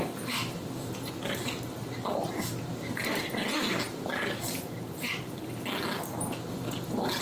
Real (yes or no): yes